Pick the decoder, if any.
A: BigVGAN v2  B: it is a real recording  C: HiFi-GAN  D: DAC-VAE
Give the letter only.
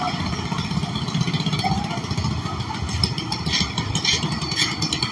B